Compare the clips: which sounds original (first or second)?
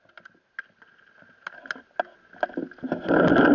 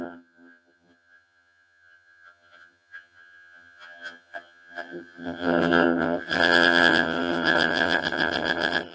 first